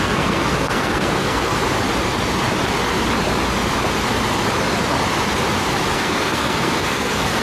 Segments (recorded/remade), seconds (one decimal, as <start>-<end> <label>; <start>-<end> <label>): 0.0-1.6 remade; 1.6-5.9 recorded; 5.9-7.4 remade